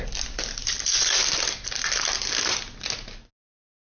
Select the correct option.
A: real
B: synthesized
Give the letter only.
A